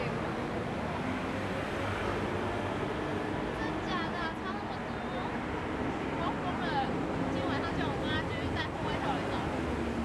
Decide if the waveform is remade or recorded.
recorded